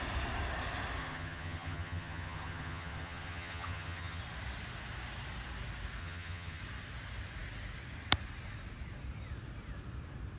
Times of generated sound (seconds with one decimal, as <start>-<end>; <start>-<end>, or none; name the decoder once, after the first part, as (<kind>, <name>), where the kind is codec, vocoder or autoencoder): 1.0-4.2 (vocoder, HiFi-GAN); 6.0-6.6